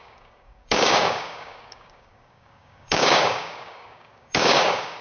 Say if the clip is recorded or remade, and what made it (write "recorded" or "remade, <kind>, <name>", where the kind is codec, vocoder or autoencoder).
remade, codec, DAC